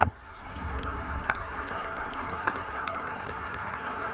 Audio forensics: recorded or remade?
remade